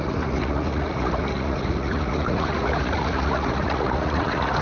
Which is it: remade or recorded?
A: remade